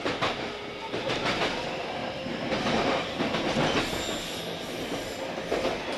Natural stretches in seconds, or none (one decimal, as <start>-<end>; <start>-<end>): 0.0-2.0; 3.8-6.0